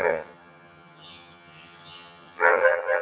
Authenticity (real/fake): fake